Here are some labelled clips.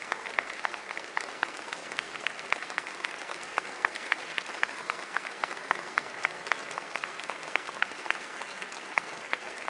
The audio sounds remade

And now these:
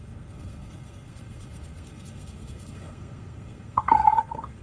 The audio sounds remade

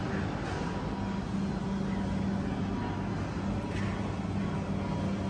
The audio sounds recorded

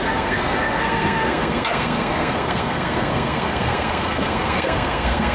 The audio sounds remade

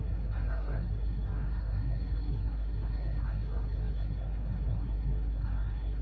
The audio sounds remade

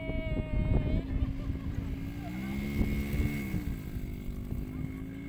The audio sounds recorded